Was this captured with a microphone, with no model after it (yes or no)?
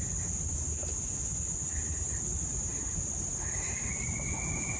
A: yes